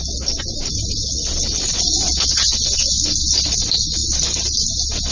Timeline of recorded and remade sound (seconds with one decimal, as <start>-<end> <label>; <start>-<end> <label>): 0.0-5.1 recorded